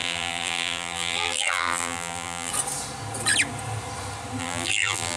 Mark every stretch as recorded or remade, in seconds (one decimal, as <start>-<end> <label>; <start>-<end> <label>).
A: 0.0-2.5 remade; 2.5-4.4 recorded; 4.4-5.2 remade